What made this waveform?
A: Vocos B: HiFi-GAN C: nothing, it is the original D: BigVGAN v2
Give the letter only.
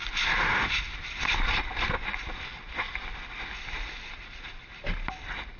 C